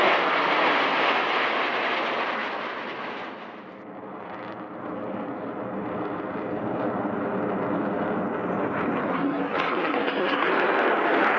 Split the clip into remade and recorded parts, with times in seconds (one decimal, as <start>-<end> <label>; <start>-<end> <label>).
0.0-9.1 recorded; 9.1-10.5 remade; 10.5-11.4 recorded